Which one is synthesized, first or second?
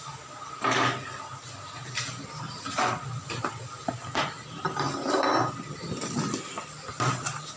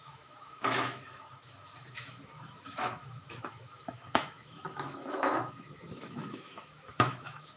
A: second